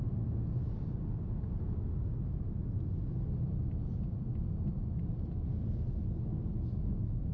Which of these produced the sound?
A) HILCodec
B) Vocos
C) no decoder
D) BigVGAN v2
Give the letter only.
C